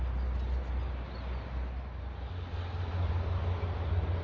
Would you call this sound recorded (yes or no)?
yes